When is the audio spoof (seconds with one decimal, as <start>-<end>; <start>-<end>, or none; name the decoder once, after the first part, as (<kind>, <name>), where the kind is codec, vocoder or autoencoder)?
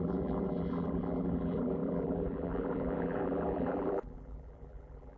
0.0-5.2 (vocoder, BigVGAN v2)